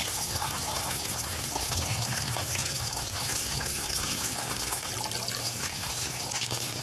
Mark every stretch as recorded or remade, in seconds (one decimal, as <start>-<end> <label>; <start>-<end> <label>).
0.0-4.9 remade; 4.9-5.4 recorded; 5.4-6.8 remade